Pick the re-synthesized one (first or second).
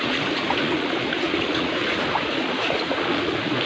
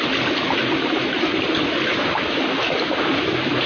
first